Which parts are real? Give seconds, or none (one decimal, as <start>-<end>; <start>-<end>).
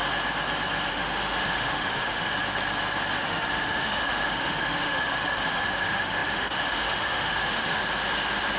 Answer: 0.0-0.9; 2.3-3.2; 7.8-8.6